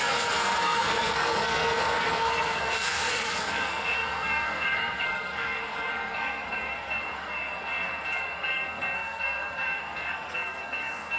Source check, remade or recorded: remade